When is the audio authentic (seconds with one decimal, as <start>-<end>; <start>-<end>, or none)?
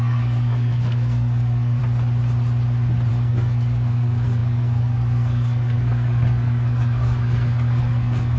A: 1.8-3.1